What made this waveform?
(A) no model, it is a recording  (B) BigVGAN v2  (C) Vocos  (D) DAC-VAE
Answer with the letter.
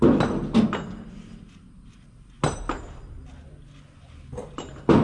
A